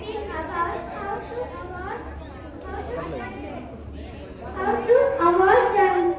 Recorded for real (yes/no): yes